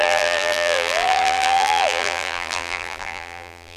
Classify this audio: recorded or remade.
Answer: remade